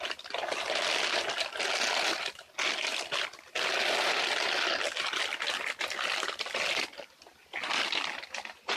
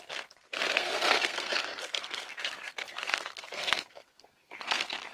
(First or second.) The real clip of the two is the first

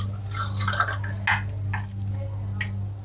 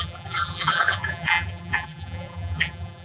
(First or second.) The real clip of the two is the first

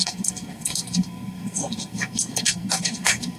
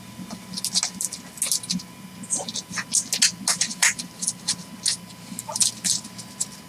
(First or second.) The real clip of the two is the second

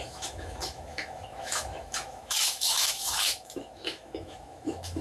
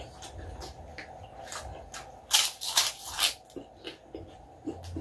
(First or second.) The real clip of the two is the second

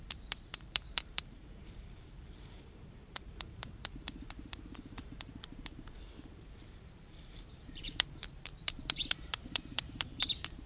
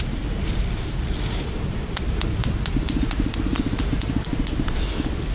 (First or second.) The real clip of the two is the second